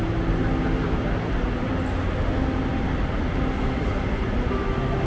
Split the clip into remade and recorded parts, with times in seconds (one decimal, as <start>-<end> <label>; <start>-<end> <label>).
0.0-5.1 recorded